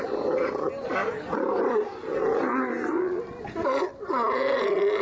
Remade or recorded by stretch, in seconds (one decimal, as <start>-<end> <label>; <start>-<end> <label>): 0.0-5.0 recorded